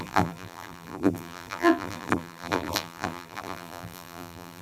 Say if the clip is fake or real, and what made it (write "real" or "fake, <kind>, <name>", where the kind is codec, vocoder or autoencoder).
fake, vocoder, BigVGAN v2